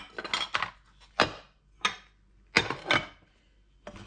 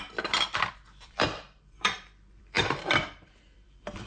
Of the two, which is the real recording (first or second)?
first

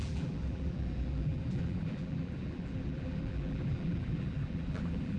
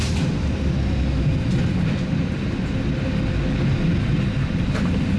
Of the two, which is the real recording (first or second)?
second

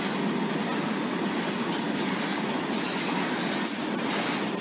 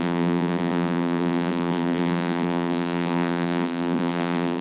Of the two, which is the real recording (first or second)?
first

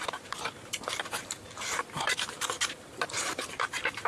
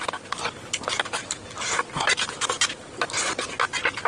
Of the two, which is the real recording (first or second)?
second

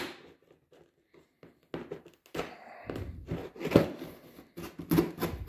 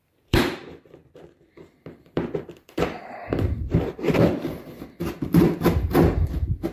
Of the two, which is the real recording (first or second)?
first